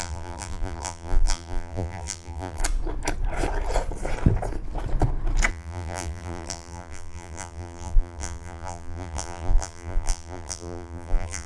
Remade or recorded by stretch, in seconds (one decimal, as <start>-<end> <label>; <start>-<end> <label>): 0.0-2.6 remade; 2.6-5.5 recorded; 5.5-11.5 remade